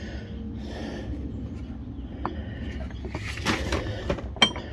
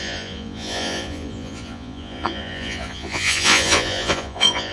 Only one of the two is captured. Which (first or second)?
first